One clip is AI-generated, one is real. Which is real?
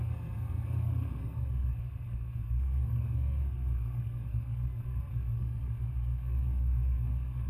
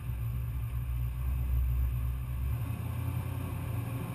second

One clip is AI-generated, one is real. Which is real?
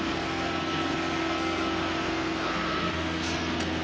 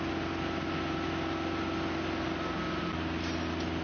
second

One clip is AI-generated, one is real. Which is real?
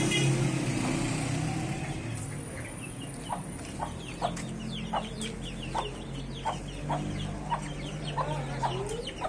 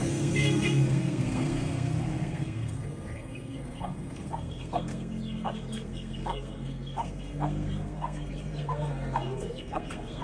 first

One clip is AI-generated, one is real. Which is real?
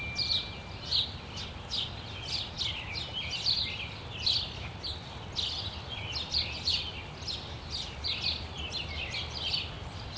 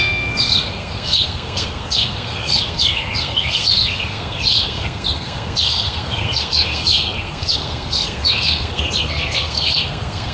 first